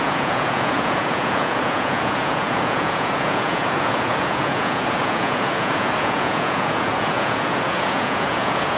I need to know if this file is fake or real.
fake